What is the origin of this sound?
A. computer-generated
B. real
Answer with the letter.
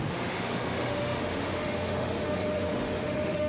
A